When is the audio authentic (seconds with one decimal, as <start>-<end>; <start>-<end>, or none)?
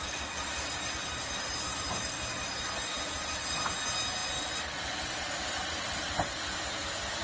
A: 0.0-7.2